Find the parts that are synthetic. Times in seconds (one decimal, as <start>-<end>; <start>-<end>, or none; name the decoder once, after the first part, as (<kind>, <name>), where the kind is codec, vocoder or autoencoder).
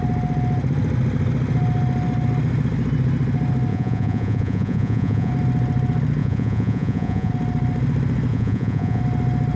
3.7-5.3 (vocoder, Vocos); 6.2-7.3; 8.3-9.0